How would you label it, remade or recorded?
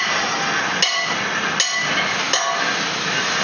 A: recorded